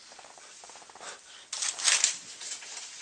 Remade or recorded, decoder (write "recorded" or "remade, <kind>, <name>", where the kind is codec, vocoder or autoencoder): recorded